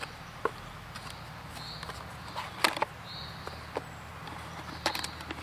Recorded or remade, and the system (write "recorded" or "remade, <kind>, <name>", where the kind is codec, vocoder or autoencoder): recorded